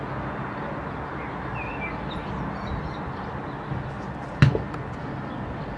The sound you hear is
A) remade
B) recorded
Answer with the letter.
B